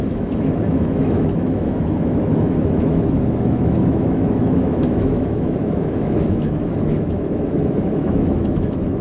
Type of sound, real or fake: fake